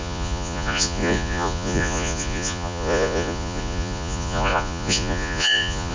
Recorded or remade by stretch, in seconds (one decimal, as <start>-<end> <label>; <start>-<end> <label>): 0.0-5.9 remade